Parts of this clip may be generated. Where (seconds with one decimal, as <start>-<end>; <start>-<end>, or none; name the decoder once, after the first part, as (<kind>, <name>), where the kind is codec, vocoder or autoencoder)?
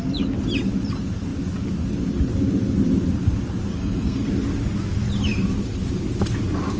3.7-4.3 (codec, SNAC)